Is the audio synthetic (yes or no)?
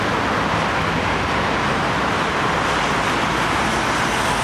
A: no